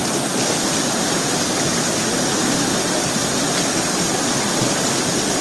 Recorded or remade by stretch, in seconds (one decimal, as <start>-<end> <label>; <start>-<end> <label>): 0.0-1.4 remade; 1.4-3.2 recorded; 3.2-3.8 remade; 3.8-5.4 recorded